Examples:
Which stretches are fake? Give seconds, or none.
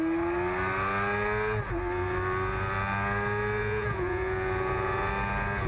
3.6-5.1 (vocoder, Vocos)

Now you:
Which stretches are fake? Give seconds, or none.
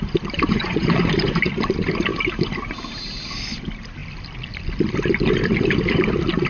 0.5-1.5 (vocoder, Vocos)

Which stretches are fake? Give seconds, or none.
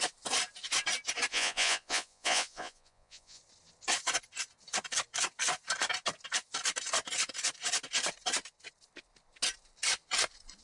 1.3-3.4 (vocoder, Vocos)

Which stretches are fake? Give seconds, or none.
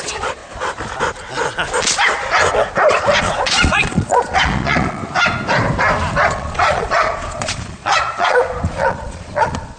0.0-0.4 (vocoder, Vocos); 3.2-5.0; 6.3-9.8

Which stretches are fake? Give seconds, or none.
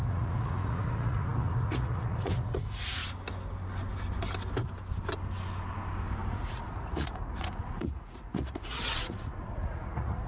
0.0-3.0 (vocoder, Vocos); 6.3-10.3